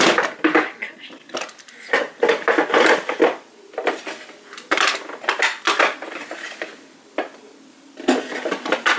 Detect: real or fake real